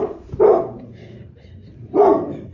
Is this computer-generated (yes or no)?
yes